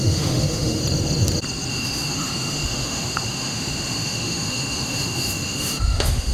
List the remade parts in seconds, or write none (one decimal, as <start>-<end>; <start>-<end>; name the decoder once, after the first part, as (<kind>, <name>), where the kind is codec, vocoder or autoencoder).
0.0-0.8 (autoencoder, DAC-VAE); 1.7-6.3